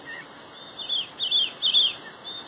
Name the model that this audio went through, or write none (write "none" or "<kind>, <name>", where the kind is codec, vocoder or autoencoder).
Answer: none